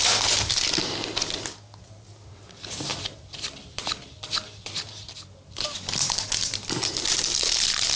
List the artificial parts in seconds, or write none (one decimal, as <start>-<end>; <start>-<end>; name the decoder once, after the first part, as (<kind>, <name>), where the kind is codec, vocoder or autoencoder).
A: none